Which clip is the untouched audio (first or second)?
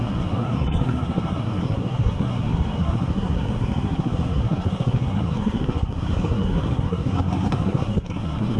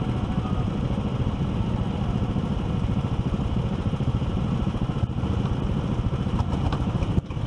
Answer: second